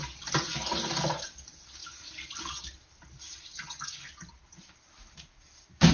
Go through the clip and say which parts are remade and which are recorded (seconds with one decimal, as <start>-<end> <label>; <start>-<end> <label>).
0.0-5.9 recorded